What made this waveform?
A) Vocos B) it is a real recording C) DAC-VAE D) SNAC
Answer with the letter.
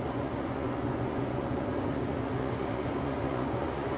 A